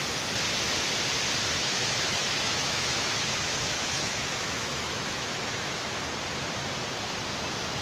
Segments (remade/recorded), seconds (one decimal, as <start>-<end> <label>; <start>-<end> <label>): 0.0-1.6 recorded; 1.6-5.9 remade; 5.9-7.8 recorded